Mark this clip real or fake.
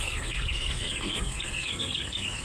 fake